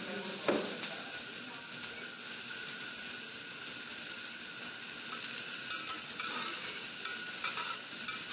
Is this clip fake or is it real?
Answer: real